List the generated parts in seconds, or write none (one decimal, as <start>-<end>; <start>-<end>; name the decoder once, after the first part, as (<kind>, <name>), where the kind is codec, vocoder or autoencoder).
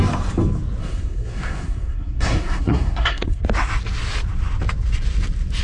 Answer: 0.8-3.4 (codec, SNAC)